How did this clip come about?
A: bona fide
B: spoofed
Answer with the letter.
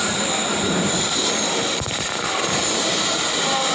A